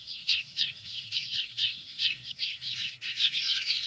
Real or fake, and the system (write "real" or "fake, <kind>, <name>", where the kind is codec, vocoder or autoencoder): fake, codec, SNAC